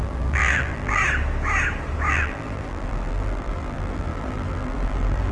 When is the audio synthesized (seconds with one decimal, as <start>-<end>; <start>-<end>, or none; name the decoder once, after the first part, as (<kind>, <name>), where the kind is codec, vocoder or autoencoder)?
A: 0.0-1.0 (vocoder, BigVGAN v2); 2.1-5.3